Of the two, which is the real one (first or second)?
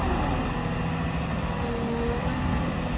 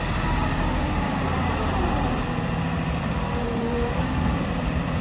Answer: first